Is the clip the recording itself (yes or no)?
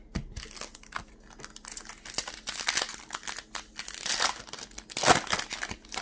yes